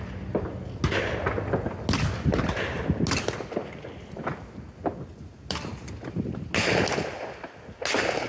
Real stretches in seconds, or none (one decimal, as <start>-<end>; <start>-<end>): 0.0-2.3; 2.8-8.3